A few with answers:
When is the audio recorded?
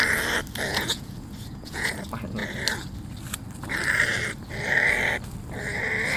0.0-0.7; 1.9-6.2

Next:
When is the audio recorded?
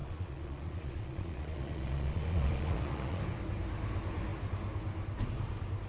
3.2-5.9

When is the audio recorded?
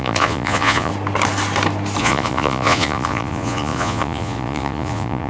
0.9-2.0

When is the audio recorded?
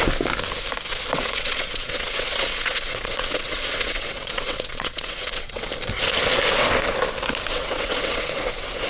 0.0-0.9; 5.7-7.5; 8.4-8.9